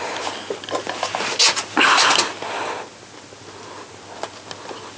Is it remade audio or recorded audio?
recorded